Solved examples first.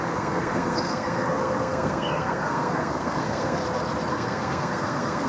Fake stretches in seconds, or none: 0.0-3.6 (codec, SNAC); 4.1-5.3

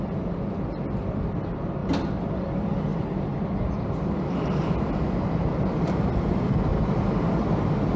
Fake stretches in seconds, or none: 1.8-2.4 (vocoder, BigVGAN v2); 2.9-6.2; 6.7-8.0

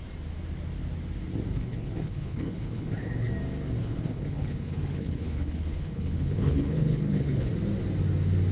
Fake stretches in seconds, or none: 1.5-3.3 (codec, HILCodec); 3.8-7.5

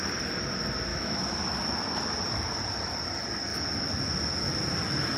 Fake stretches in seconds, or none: 0.9-1.4 (autoencoder, DAC-VAE)